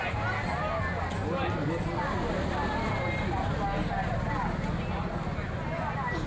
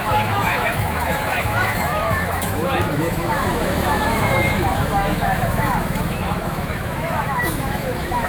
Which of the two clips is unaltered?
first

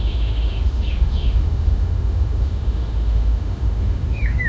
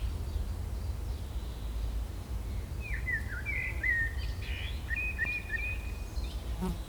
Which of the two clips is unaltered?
second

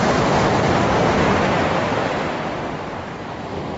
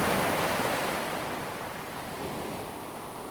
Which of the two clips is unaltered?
first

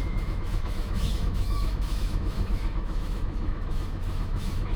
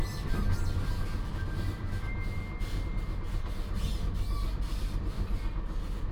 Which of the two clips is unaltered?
second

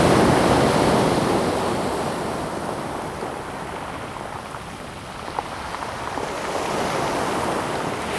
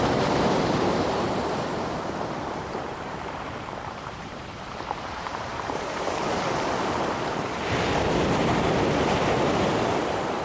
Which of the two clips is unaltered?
first